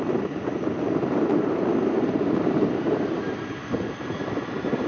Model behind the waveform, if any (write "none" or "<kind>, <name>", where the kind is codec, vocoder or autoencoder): vocoder, BigVGAN v2